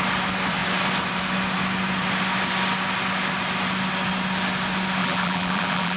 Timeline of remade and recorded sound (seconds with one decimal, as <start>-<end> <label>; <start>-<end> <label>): 0.0-5.0 recorded; 5.0-6.0 remade

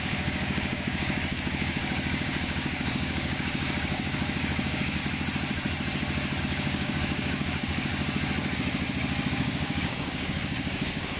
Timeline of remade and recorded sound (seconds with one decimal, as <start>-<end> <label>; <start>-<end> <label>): 0.0-5.0 remade; 5.0-6.4 recorded; 6.4-7.9 remade; 7.9-9.3 recorded; 9.3-11.2 remade

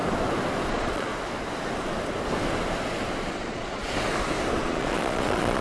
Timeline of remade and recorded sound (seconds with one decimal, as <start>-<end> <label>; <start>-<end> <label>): 0.0-0.7 recorded; 0.7-1.1 remade; 1.1-3.3 recorded; 3.3-3.8 remade; 3.8-4.6 recorded; 4.6-5.6 remade

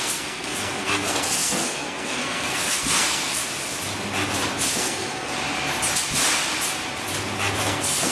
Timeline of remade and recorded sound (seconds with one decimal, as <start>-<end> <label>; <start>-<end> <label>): 0.0-3.4 remade; 3.4-4.7 recorded; 4.7-5.3 remade; 5.3-7.6 recorded; 7.6-8.1 remade

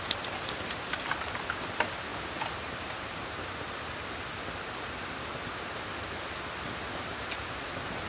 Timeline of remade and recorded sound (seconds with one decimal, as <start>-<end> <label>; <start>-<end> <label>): 0.0-8.1 recorded

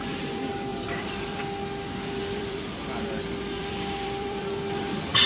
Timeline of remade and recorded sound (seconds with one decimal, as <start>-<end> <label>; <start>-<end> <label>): 0.0-0.7 recorded; 0.7-1.4 remade; 1.4-2.2 recorded; 2.2-5.3 remade